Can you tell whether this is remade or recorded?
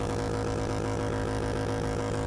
recorded